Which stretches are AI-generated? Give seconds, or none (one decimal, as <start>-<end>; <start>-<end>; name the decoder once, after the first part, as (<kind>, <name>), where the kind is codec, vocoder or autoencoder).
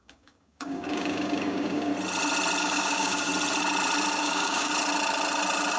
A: 0.0-1.9 (codec, DAC); 2.6-3.3; 4.2-4.7